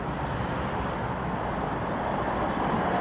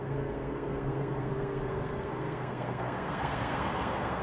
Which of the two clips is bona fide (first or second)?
first